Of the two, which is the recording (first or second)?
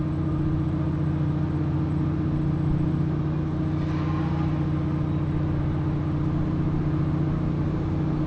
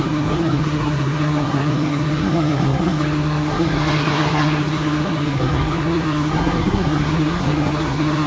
first